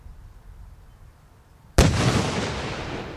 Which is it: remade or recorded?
recorded